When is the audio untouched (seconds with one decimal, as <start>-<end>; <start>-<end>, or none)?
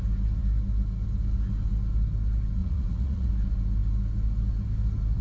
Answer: 0.0-2.6; 3.3-5.2